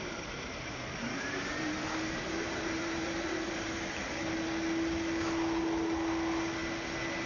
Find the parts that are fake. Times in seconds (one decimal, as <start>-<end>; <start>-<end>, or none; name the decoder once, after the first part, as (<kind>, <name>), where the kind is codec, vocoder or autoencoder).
0.0-4.1 (vocoder, BigVGAN v2)